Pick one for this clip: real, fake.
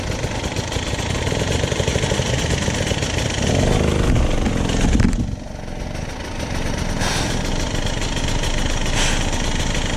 real